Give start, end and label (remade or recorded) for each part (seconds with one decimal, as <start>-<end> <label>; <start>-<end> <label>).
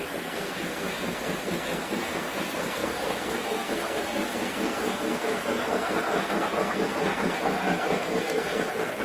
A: 0.0-9.0 remade